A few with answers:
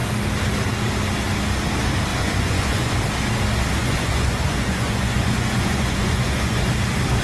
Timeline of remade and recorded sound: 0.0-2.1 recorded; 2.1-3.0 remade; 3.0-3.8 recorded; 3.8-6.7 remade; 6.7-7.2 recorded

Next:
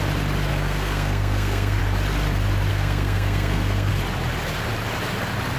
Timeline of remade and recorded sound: 0.0-0.5 recorded; 0.5-1.8 remade; 1.8-2.7 recorded; 2.7-3.9 remade; 3.9-5.6 recorded

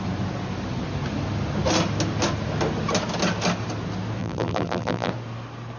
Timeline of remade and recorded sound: 0.0-4.2 recorded; 4.2-5.1 remade; 5.1-5.8 recorded